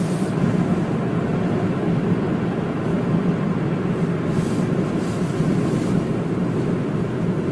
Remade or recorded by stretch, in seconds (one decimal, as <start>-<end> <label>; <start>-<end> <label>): 0.0-7.5 recorded